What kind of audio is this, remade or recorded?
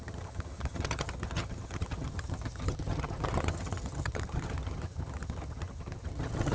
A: remade